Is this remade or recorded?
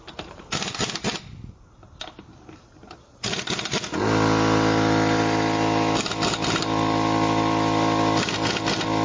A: recorded